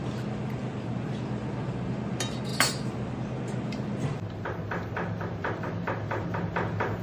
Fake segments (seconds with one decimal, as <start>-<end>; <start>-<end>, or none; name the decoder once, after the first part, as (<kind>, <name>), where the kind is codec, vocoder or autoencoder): none